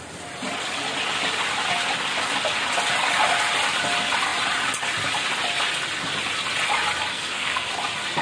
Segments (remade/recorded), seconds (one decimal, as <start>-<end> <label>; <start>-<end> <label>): 0.0-7.1 recorded; 7.1-7.7 remade; 7.7-8.2 recorded